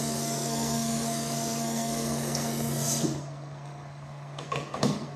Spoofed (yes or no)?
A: yes